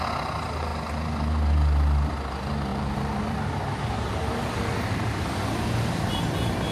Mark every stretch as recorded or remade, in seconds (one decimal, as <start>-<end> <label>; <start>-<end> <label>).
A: 0.0-2.7 recorded; 2.7-6.2 remade; 6.2-6.7 recorded